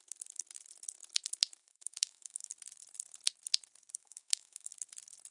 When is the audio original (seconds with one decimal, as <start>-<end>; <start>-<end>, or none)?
0.0-1.6; 2.5-4.0; 4.7-5.3